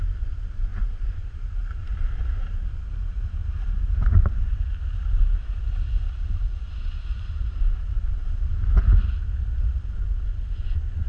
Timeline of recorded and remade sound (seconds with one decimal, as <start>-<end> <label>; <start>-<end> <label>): 0.0-0.7 recorded; 0.7-1.4 remade; 1.4-3.4 recorded; 3.4-8.6 remade; 8.6-11.1 recorded

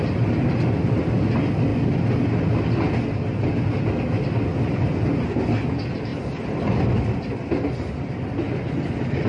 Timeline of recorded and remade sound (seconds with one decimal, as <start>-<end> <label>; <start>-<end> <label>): 0.0-1.7 recorded; 1.7-2.8 remade; 2.8-6.1 recorded; 6.1-6.8 remade; 6.8-9.3 recorded

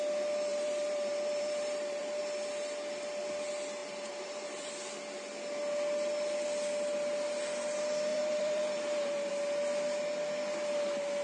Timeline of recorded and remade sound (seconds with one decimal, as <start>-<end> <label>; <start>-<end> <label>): 0.0-0.5 recorded; 0.5-2.2 remade; 2.2-3.8 recorded; 3.8-4.7 remade; 4.7-8.1 recorded; 8.1-9.3 remade; 9.3-11.2 recorded